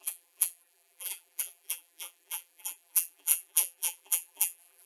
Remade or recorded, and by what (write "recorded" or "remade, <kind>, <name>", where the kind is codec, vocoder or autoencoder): remade, vocoder, BigVGAN v2